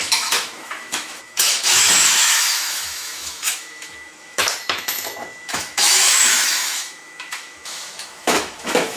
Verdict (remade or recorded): remade